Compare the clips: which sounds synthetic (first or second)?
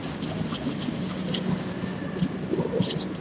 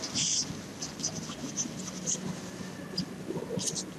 first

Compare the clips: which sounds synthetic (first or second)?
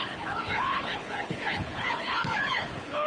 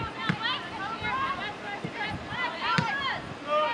first